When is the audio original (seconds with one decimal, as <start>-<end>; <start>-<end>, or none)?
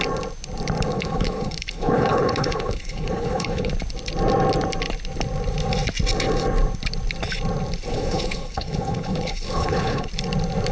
0.0-0.9; 3.7-7.9; 10.1-10.7